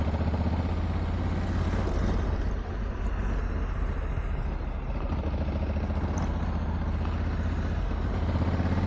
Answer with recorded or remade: recorded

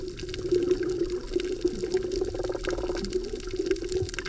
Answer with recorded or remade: recorded